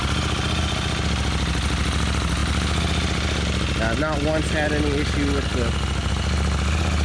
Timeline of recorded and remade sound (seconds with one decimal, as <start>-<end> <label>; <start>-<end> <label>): 0.0-7.0 recorded